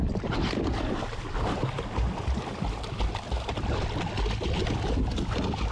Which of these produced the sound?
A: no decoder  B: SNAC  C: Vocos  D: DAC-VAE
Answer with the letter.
A